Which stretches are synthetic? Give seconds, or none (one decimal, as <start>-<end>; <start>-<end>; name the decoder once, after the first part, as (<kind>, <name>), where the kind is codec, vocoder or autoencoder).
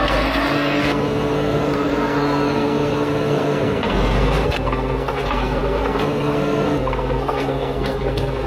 0.0-8.5 (codec, SNAC)